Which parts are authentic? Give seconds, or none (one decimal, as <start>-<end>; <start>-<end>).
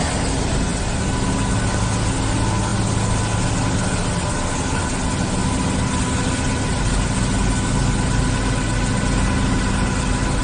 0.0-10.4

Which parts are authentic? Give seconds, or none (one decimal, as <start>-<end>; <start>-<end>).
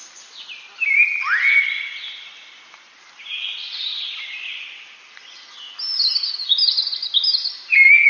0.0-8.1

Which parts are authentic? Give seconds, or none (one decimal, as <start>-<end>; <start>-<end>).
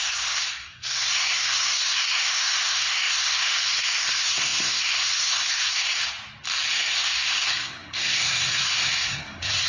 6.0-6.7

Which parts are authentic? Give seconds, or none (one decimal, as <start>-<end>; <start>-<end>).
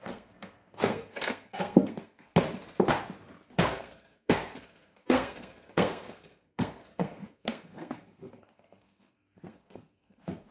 2.3-3.5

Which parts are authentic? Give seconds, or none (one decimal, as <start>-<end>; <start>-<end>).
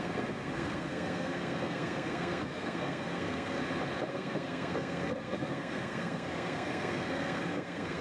3.6-4.1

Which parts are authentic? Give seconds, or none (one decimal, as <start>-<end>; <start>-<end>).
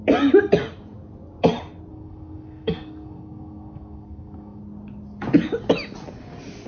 0.0-1.9; 4.6-6.7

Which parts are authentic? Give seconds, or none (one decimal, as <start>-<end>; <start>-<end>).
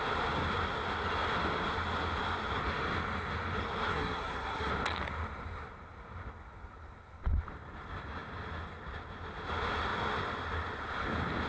0.0-3.9; 4.7-11.5